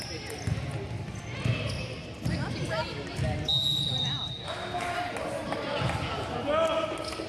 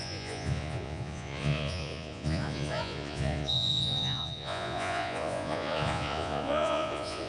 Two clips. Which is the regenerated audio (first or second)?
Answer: second